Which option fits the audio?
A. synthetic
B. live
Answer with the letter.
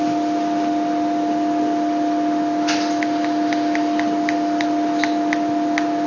B